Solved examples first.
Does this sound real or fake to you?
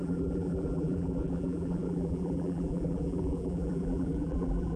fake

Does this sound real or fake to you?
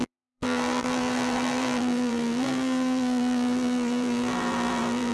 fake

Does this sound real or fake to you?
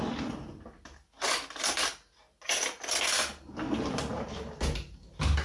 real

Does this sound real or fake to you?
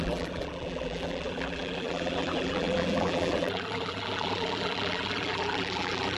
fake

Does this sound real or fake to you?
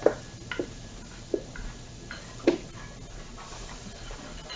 real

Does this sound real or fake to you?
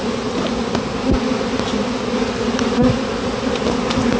real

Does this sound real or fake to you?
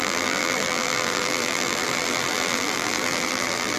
fake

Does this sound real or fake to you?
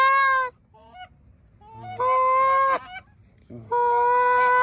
real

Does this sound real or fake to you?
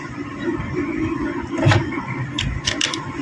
fake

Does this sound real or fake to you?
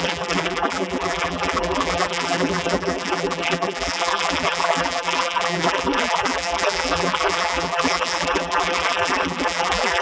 fake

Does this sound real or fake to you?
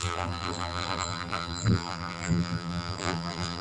fake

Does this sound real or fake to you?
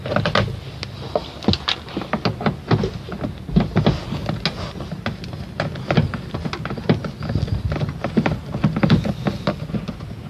real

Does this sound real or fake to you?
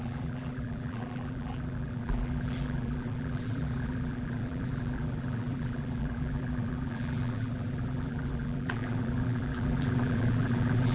fake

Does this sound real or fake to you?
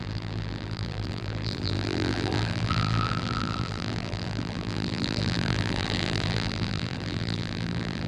fake